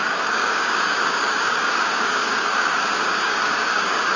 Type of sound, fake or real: fake